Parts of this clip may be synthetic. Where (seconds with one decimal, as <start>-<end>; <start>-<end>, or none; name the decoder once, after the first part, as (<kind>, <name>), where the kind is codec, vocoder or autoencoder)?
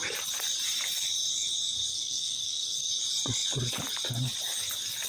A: 1.9-2.9 (codec, SNAC)